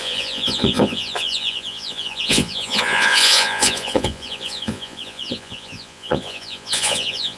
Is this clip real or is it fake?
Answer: fake